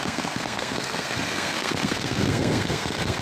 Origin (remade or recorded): remade